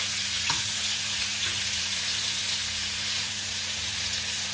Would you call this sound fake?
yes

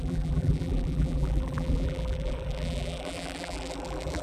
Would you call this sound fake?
yes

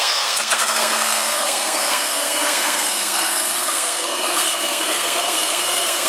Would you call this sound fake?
yes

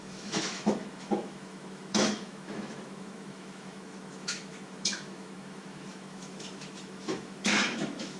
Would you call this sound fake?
yes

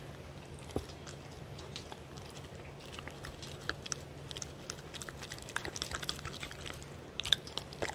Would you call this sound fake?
no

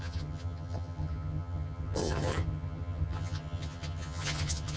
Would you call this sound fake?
yes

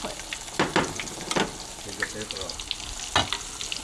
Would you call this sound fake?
no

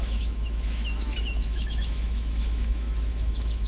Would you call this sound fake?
yes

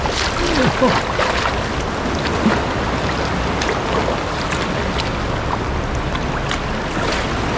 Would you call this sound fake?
no